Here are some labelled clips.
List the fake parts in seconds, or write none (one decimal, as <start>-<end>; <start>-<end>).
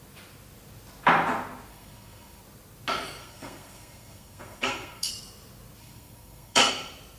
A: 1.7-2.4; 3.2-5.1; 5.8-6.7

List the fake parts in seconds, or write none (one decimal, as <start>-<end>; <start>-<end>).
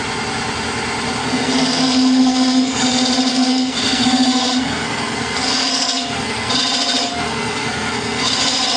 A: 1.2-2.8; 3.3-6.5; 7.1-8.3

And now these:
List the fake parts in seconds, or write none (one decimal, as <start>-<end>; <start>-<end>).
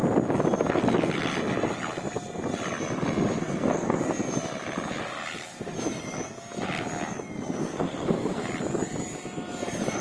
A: 3.4-4.0; 7.6-8.4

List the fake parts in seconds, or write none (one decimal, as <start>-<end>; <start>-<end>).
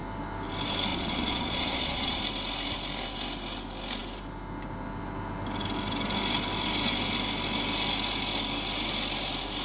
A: 0.9-2.2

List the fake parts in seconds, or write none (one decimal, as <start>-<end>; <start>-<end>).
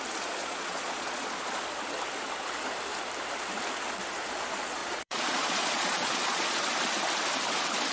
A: 0.4-1.6; 4.8-6.6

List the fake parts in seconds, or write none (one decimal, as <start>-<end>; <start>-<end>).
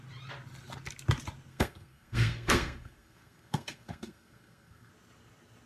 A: 1.5-4.9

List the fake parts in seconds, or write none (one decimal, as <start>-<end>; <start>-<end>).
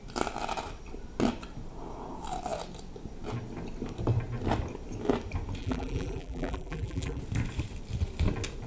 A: 5.6-7.2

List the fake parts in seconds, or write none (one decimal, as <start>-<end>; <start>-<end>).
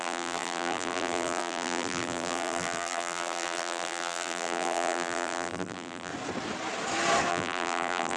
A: 0.0-6.1; 7.3-8.2